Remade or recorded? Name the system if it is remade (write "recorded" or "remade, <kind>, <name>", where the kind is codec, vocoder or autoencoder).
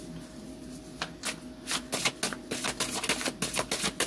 recorded